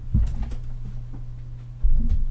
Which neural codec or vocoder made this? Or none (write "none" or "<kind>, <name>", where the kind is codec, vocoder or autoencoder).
none